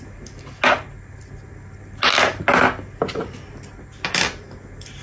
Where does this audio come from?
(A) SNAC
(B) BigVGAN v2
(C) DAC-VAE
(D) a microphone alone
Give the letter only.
D